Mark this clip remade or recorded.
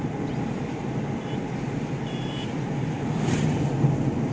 recorded